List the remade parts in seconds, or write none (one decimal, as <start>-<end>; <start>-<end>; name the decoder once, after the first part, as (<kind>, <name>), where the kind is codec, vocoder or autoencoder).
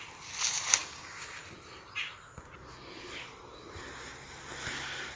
0.8-1.4 (codec, DAC)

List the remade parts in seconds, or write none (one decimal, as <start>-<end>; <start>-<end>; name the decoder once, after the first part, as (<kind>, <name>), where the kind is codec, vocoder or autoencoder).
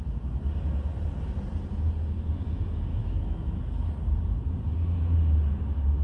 2.9-3.6 (autoencoder, DAC-VAE)